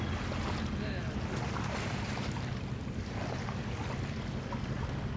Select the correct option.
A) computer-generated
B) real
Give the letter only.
B